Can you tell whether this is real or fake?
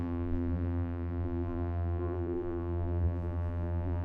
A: fake